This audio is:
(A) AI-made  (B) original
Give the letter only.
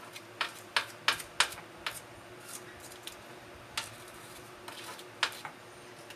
B